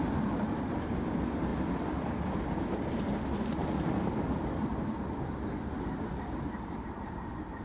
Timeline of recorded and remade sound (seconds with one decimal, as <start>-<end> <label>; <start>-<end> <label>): 0.0-7.6 recorded